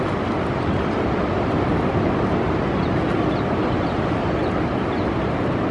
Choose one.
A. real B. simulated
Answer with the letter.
A